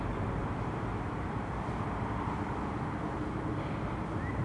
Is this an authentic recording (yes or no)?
yes